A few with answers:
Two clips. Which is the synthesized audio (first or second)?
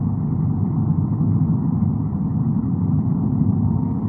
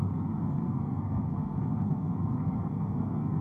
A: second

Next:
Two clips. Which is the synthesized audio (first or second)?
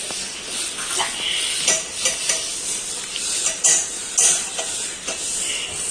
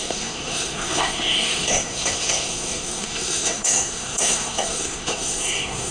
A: second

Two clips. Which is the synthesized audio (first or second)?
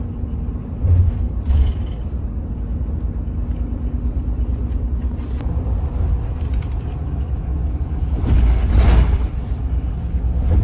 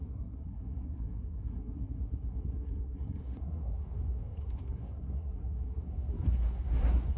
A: second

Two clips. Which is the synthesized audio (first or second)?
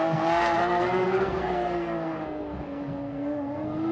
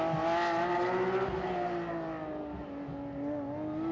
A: first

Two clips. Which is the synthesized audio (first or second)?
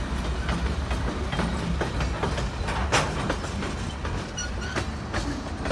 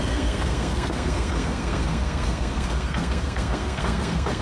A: second